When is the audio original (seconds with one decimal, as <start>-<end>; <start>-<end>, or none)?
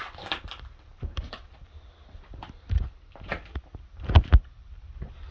0.0-0.9; 3.4-5.3